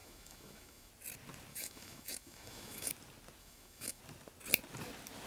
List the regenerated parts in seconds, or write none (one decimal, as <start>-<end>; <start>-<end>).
0.0-0.9; 1.5-2.9; 3.4-4.0